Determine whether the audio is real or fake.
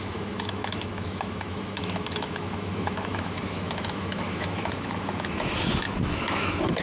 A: fake